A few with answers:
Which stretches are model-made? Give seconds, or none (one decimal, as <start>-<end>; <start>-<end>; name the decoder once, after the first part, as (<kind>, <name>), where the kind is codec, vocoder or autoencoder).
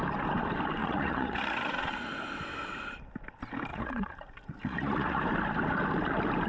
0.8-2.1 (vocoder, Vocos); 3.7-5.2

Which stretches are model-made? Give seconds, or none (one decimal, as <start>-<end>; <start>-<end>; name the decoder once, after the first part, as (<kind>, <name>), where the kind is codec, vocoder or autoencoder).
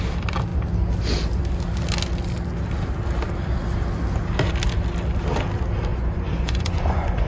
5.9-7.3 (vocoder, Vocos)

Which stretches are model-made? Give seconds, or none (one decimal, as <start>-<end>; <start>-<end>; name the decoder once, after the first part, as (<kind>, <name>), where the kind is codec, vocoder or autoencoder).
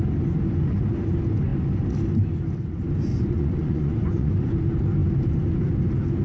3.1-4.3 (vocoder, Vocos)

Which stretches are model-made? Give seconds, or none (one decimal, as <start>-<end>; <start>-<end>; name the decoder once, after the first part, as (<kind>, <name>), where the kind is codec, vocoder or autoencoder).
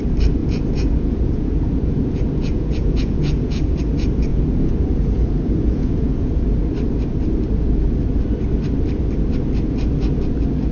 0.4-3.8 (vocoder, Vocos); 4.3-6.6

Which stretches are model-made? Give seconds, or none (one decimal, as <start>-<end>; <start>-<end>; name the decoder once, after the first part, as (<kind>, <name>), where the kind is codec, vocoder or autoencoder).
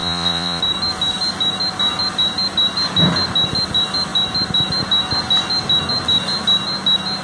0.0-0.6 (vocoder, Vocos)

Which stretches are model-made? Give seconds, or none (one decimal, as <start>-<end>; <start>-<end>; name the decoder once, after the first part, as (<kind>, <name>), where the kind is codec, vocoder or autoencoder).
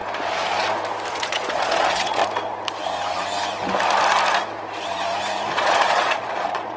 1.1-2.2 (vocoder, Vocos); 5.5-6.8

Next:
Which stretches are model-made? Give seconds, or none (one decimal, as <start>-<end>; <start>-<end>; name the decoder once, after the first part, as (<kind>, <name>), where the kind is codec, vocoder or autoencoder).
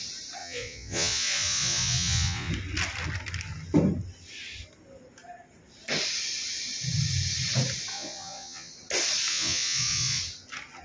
0.4-2.5 (vocoder, Vocos); 7.9-8.7; 9.3-10.2